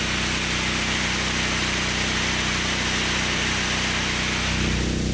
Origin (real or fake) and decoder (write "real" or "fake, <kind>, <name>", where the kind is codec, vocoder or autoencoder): real